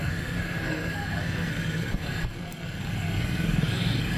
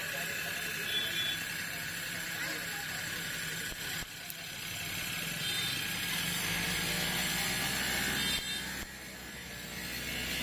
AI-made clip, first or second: first